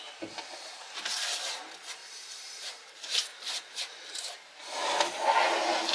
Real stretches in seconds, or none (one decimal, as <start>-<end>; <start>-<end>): 0.0-2.0; 4.5-5.9